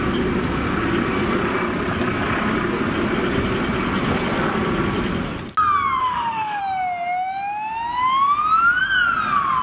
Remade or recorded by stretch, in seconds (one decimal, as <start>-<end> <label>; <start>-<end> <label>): 0.0-6.0 recorded; 6.0-6.6 remade; 6.6-9.6 recorded